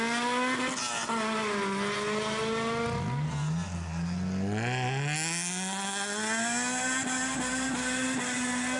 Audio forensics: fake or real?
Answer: real